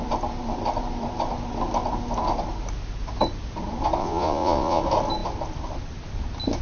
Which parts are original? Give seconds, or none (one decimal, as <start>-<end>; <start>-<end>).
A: 0.0-4.0; 4.8-6.6